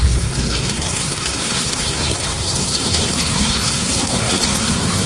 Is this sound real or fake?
fake